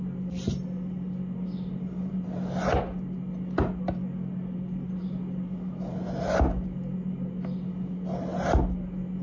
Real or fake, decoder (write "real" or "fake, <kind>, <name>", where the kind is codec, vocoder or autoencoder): real